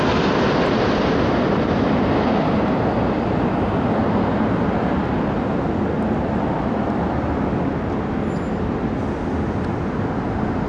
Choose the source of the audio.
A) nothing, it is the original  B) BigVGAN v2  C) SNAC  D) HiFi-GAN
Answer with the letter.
A